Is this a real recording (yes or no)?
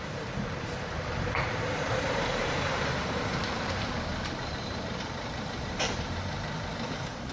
no